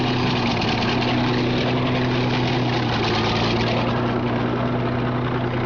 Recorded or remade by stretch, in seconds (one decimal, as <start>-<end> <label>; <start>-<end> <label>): 0.0-5.7 recorded